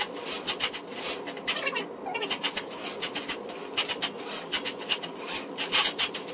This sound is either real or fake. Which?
real